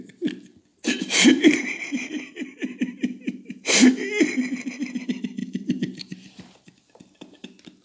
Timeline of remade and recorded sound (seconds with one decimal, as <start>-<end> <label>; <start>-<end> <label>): 0.0-0.7 recorded; 0.7-3.9 remade; 3.9-5.4 recorded; 5.4-6.7 remade; 6.7-7.8 recorded